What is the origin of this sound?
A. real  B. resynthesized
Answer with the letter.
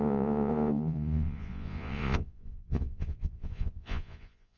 B